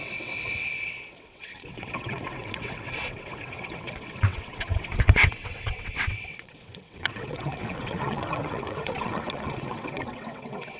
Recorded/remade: remade